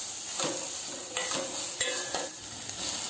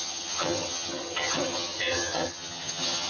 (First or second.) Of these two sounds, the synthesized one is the second